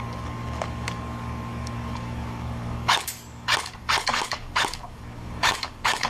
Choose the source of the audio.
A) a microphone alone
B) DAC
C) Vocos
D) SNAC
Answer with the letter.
B